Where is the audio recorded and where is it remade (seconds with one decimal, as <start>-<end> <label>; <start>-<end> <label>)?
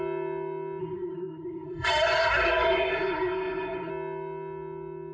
0.0-0.8 recorded; 0.8-3.9 remade; 3.9-5.1 recorded